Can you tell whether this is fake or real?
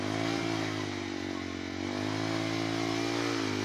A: real